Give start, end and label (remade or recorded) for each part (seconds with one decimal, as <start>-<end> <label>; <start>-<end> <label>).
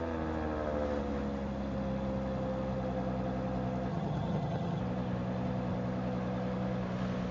0.0-3.9 recorded; 3.9-4.8 remade; 4.8-7.3 recorded